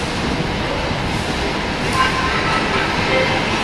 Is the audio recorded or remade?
recorded